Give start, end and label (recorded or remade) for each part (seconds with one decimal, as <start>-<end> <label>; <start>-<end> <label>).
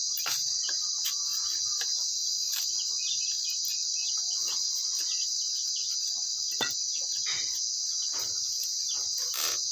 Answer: 0.0-9.7 recorded